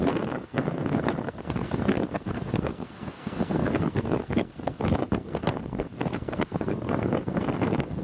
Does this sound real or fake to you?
fake